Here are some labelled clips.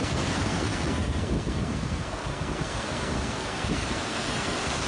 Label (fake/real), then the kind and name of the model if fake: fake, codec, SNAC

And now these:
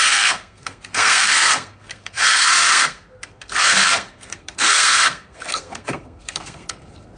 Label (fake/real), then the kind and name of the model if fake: fake, codec, SNAC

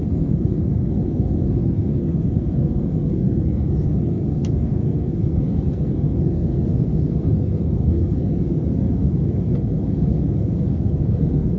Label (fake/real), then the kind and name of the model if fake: fake, codec, SNAC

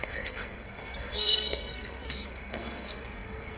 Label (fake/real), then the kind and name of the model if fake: fake, codec, SNAC